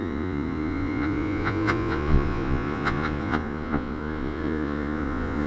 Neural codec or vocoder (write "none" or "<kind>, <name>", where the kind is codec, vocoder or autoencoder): vocoder, Vocos